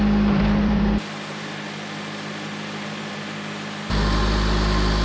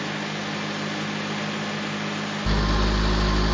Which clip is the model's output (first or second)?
first